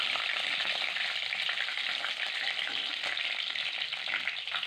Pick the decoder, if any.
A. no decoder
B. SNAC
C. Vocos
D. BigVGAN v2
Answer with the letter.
A